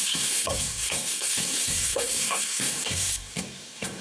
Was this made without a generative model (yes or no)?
no